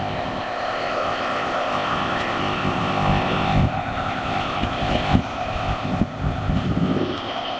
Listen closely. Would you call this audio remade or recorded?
remade